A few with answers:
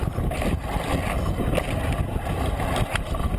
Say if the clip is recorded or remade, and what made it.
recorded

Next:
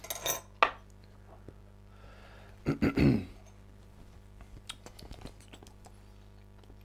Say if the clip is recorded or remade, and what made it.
recorded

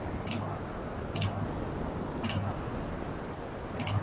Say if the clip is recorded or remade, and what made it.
recorded